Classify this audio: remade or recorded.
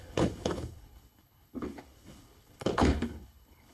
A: remade